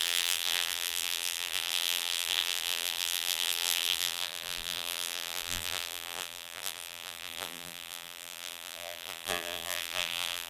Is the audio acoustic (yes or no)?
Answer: no